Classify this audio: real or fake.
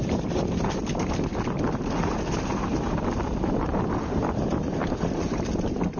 fake